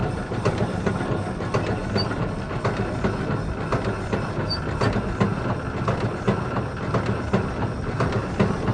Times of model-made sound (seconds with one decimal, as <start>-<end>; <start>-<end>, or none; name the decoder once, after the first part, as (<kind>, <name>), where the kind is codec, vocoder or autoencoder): 0.0-0.9 (vocoder, BigVGAN v2)